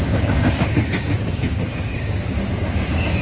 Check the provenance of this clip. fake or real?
fake